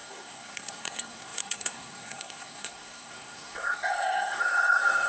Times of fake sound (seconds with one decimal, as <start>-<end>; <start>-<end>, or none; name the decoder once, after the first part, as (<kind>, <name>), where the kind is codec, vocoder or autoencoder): 0.0-5.1 (codec, SNAC)